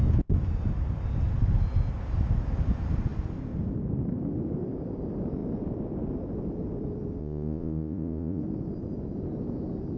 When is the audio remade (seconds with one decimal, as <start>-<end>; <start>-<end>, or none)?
7.2-8.4